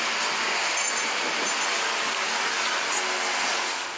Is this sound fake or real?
real